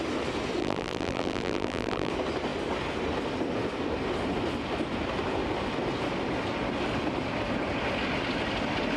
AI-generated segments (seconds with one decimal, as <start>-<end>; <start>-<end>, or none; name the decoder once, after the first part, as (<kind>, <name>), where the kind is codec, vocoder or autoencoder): 0.6-2.1 (vocoder, BigVGAN v2)